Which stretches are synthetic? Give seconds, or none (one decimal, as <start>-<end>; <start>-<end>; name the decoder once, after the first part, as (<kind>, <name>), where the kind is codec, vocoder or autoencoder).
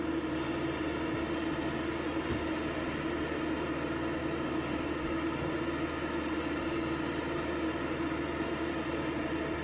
none